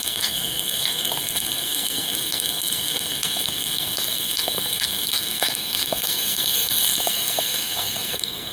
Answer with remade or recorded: remade